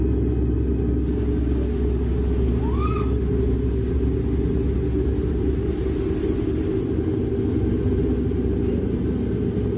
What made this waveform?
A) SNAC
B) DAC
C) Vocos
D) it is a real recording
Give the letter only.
D